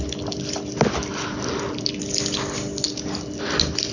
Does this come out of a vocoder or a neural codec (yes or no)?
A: no